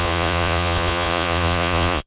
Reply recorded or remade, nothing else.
remade